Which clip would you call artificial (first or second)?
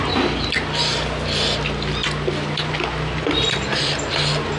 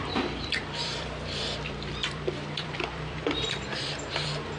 second